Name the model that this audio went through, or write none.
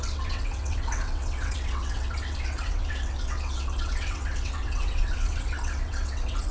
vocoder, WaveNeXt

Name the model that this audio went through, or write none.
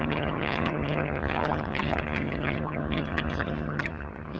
vocoder, HiFi-GAN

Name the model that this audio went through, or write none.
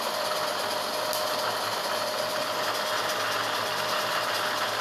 none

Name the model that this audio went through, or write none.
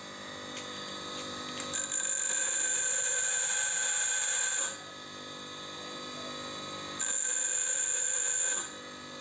none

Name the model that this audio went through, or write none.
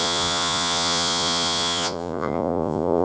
vocoder, Vocos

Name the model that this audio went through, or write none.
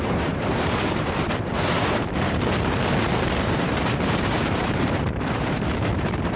vocoder, BigVGAN v2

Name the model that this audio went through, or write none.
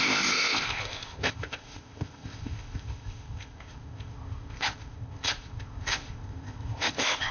codec, ZipCodec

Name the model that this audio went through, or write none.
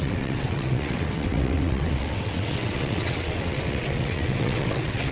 vocoder, WaveNeXt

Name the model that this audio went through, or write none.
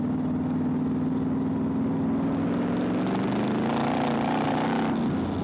none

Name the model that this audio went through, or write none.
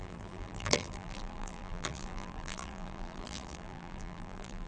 vocoder, BigVGAN v2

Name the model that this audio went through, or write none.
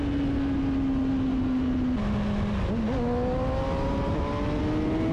none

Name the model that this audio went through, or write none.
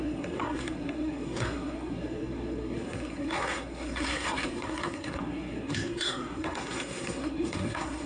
codec, SNAC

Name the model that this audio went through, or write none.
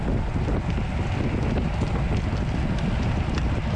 none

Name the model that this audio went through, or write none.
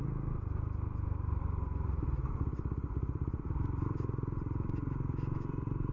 vocoder, BigVGAN v2